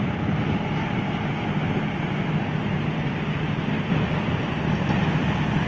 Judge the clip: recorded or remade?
recorded